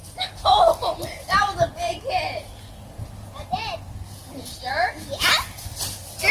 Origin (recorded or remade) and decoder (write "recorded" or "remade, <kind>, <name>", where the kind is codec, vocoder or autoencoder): recorded